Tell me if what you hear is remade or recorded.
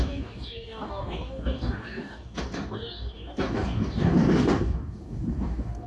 remade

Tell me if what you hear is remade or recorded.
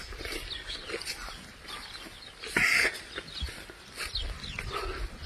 recorded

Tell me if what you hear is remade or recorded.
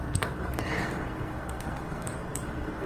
remade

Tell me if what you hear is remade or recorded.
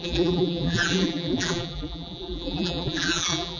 remade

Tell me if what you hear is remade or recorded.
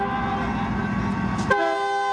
recorded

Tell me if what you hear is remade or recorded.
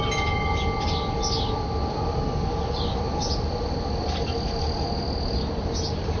recorded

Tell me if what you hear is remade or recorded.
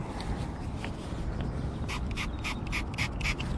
recorded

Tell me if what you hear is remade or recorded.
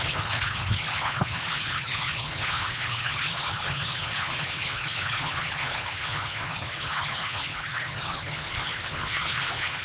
remade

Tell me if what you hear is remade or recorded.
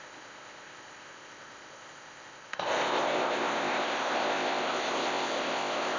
remade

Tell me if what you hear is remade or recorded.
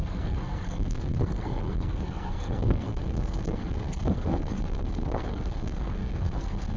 remade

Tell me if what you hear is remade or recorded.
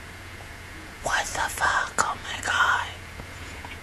remade